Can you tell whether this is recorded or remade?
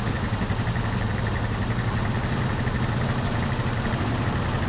recorded